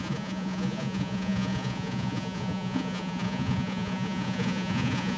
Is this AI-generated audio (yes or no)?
yes